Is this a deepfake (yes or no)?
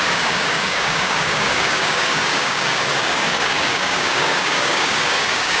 yes